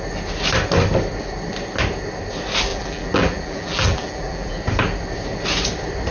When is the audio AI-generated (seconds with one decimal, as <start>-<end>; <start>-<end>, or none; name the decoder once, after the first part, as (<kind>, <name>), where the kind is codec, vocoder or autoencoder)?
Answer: 2.7-4.5 (vocoder, BigVGAN v2)